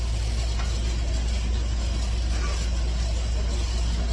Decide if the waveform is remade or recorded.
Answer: recorded